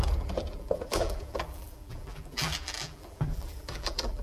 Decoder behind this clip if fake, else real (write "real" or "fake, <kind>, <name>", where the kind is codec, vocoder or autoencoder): fake, vocoder, BigVGAN v2